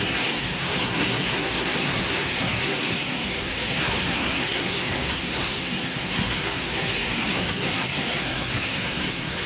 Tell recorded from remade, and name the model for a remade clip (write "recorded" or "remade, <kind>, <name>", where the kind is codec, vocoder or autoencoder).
remade, codec, SNAC